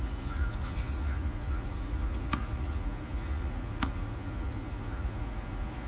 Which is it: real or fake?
fake